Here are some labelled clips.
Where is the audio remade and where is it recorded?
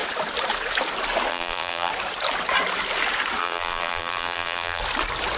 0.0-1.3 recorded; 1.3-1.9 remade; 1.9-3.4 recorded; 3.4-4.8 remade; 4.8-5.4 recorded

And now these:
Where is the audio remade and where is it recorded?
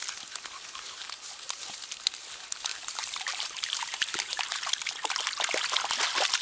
0.0-1.0 recorded; 1.0-1.6 remade; 1.6-2.7 recorded; 2.7-4.8 remade; 4.8-6.4 recorded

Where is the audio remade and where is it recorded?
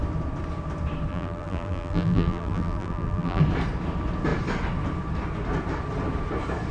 0.0-1.1 recorded; 1.1-3.4 remade; 3.4-6.7 recorded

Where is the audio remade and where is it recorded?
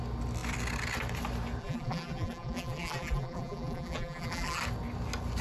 0.0-1.6 recorded; 1.6-4.6 remade; 4.6-5.4 recorded